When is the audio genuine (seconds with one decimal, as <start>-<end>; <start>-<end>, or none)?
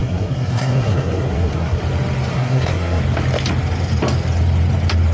1.8-2.3; 3.0-5.1